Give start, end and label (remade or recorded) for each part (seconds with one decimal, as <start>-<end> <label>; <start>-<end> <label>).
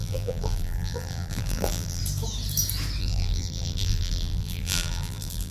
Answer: 0.0-2.0 remade; 2.0-3.0 recorded; 3.0-5.5 remade